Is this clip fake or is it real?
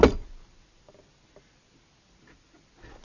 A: real